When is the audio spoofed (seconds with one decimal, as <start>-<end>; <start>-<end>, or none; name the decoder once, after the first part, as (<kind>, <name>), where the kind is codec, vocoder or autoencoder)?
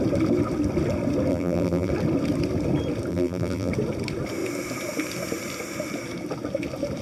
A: 1.3-1.9 (vocoder, BigVGAN v2); 3.1-3.7